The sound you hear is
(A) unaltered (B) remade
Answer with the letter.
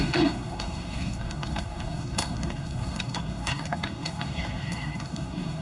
B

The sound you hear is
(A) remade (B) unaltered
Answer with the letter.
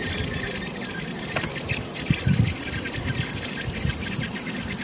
B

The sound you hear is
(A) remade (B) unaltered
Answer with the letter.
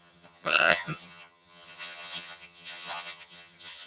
A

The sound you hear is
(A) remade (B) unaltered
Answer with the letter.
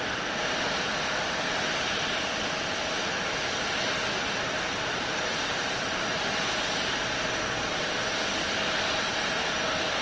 B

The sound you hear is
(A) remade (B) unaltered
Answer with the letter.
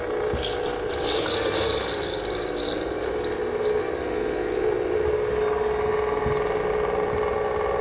B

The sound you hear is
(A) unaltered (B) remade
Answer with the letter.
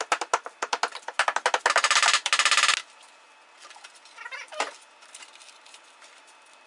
A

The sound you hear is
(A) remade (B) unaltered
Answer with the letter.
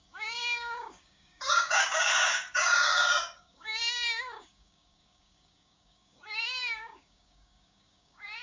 A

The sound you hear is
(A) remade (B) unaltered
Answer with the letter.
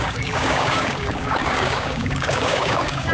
A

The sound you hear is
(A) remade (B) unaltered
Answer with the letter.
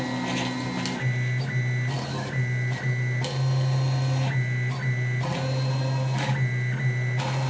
B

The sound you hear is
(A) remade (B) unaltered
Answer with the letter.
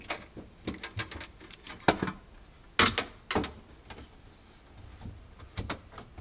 B